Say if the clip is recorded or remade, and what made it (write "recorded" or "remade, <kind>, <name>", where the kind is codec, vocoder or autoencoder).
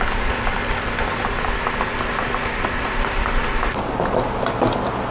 recorded